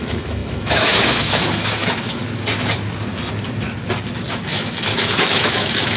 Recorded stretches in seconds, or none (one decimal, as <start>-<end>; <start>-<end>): 2.2-4.3